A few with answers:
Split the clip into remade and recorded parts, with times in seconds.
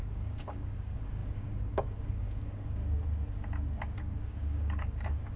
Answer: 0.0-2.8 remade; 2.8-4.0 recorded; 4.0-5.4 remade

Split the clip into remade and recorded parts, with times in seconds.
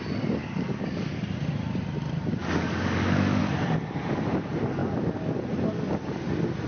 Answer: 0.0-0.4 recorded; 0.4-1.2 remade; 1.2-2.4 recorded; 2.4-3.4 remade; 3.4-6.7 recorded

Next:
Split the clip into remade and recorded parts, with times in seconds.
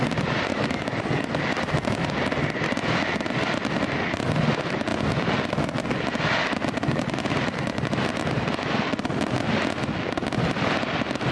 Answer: 0.0-0.5 recorded; 0.5-1.4 remade; 1.4-11.3 recorded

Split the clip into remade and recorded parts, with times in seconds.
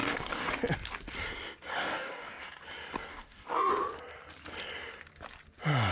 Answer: 0.0-0.5 remade; 0.5-1.7 recorded; 1.7-2.6 remade; 2.6-3.1 recorded; 3.1-3.7 remade; 3.7-5.9 recorded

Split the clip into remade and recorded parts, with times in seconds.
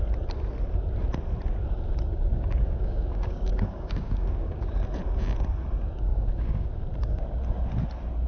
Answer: 0.0-2.1 recorded; 2.1-4.7 remade; 4.7-6.1 recorded; 6.1-6.7 remade; 6.7-8.3 recorded